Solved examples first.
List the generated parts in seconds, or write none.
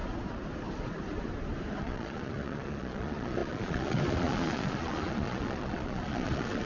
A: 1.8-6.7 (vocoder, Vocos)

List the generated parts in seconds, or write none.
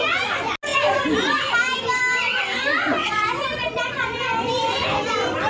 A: 3.0-4.2 (vocoder, Vocos)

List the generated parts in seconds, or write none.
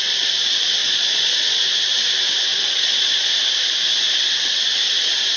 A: 0.8-1.6 (vocoder, Vocos); 2.5-3.3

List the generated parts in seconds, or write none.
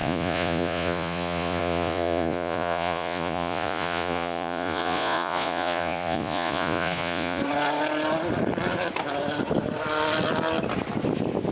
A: 0.0-7.4 (vocoder, Vocos)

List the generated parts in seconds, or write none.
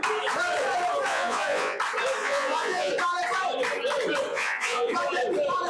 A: 1.1-1.8 (vocoder, Vocos); 2.2-2.9; 4.3-4.9